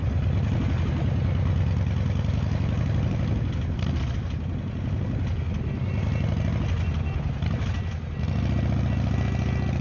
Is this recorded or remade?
recorded